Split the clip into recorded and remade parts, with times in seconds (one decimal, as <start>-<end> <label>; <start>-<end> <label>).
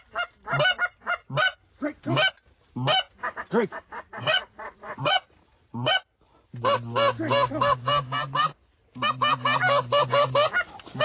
0.0-3.2 recorded; 3.2-6.0 remade; 6.0-11.0 recorded